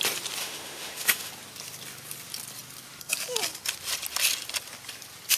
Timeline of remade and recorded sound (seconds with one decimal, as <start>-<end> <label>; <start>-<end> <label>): 0.0-0.4 recorded; 0.4-1.3 remade; 1.3-5.4 recorded